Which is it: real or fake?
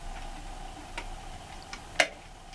real